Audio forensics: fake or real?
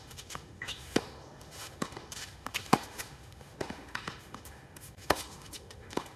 fake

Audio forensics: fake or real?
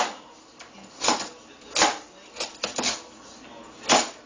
real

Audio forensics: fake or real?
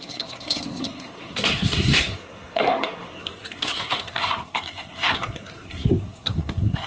fake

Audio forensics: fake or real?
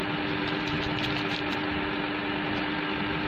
real